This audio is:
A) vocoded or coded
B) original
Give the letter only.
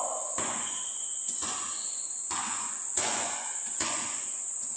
A